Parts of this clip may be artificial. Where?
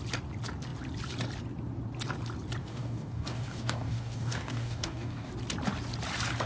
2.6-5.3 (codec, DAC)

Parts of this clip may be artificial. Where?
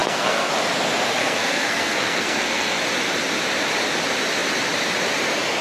0.0-0.5 (codec, SNAC); 1.2-2.8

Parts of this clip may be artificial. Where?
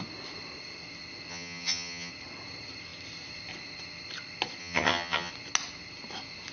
1.3-2.1 (vocoder, HiFi-GAN); 4.6-5.3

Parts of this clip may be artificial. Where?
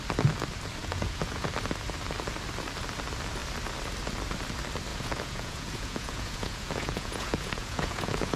0.8-1.5 (vocoder, Vocos); 4.9-8.4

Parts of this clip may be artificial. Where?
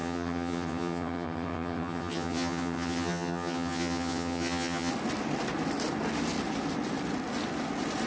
0.0-4.9 (vocoder, HiFi-GAN)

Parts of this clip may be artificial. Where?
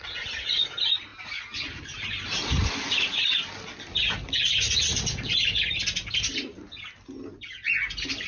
none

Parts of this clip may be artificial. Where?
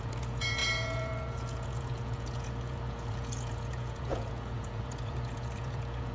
0.0-6.1 (vocoder, Vocos)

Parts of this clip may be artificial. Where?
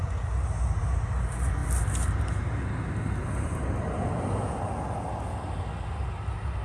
0.0-0.8 (vocoder, BigVGAN v2)